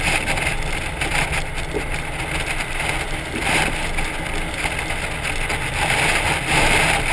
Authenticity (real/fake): real